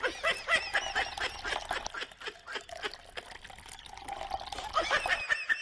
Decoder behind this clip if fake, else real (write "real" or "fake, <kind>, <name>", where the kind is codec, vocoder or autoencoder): real